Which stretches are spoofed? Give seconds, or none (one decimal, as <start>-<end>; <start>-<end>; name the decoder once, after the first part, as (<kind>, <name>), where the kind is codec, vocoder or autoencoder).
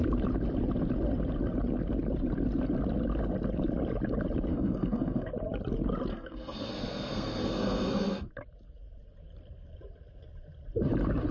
4.5-5.3 (codec, SNAC); 6.1-8.3